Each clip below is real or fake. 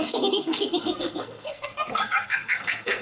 fake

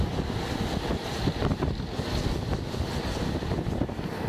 real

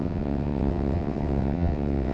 fake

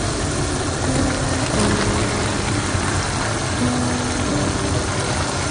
real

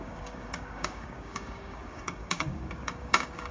fake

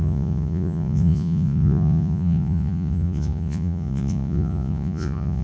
fake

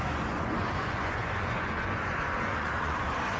fake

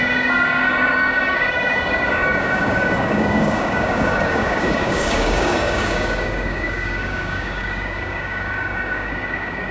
fake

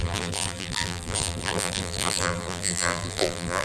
fake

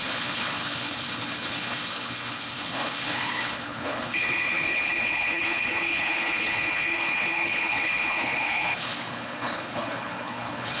fake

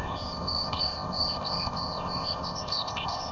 fake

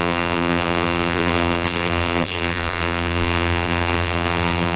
fake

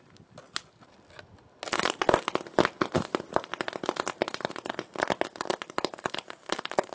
real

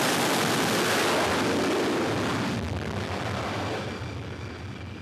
real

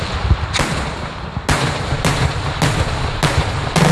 real